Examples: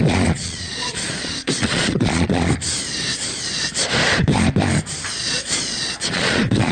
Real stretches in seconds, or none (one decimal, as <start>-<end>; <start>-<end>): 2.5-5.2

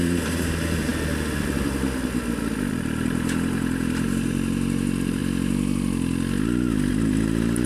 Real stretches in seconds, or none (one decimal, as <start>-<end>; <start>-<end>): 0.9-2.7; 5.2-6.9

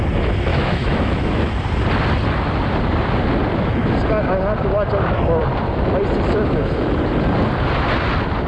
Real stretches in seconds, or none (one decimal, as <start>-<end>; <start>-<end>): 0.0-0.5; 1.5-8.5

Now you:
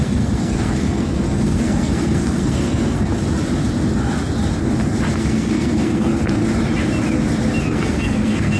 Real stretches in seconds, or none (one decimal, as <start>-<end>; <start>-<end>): 3.1-5.2; 6.4-7.6

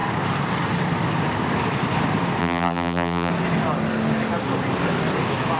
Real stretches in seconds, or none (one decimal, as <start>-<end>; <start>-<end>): 0.0-2.4; 3.3-5.6